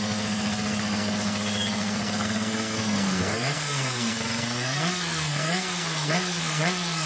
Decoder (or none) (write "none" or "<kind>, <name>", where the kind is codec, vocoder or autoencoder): codec, SNAC